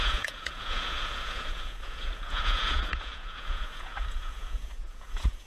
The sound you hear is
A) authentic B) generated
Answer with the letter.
B